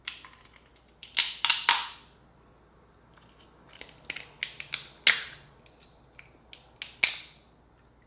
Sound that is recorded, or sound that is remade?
recorded